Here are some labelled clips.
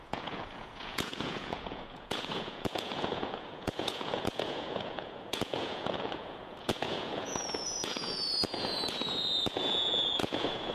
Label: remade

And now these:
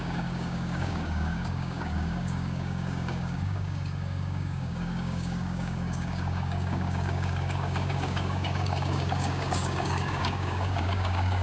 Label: remade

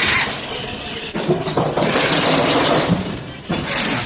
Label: recorded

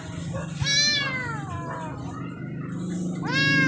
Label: recorded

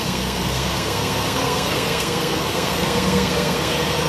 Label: remade